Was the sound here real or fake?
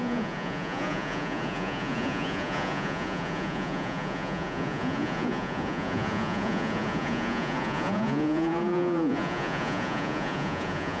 fake